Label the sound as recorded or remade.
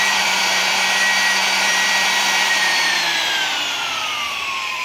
remade